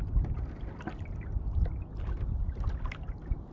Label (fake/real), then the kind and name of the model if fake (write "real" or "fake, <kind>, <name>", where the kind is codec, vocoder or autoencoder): real